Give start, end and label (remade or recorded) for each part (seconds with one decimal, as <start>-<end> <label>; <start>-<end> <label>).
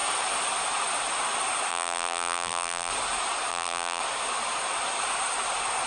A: 0.0-1.7 recorded; 1.7-2.9 remade; 2.9-3.5 recorded; 3.5-4.0 remade; 4.0-5.9 recorded